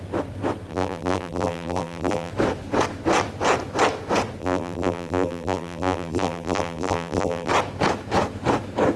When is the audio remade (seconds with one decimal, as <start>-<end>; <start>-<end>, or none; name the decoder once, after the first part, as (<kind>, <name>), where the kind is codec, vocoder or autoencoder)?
0.7-2.3 (vocoder, BigVGAN v2); 4.4-7.5